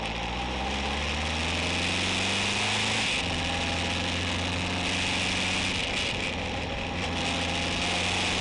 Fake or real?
real